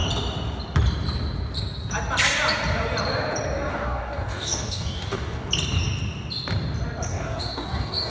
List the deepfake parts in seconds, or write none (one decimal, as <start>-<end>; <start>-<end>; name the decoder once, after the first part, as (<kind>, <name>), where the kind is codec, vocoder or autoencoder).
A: 3.7-5.5 (codec, DAC); 7.1-8.1